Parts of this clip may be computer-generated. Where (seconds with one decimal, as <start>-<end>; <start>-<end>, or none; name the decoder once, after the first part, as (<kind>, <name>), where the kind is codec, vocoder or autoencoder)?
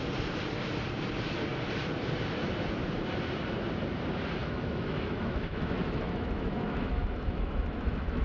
4.4-8.2 (autoencoder, DAC-VAE)